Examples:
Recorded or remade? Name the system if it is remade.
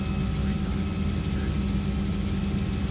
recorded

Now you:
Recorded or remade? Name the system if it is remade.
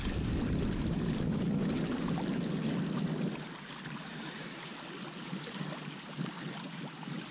recorded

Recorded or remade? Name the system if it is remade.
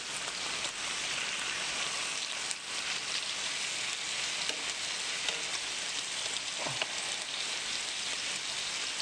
recorded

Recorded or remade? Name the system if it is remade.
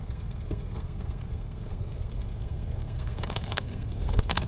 remade, codec, SNAC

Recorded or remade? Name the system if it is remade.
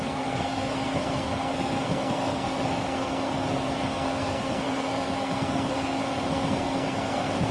remade, codec, SNAC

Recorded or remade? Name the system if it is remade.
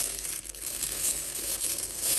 remade, codec, SNAC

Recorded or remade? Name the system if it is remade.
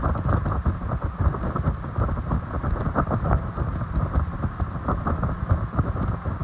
recorded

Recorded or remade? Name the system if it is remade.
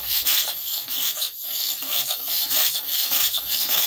remade, codec, SNAC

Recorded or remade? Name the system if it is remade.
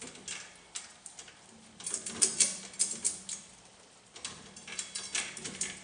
recorded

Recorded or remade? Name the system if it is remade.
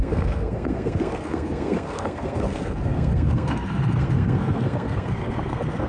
remade, codec, SNAC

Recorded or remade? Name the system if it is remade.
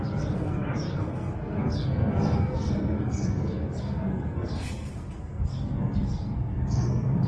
remade, codec, SNAC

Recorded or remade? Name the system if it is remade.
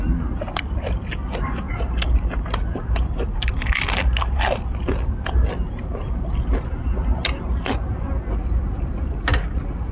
recorded